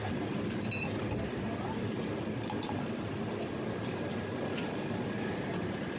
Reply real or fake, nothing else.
real